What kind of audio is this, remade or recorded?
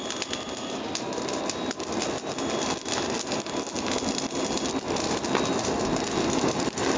recorded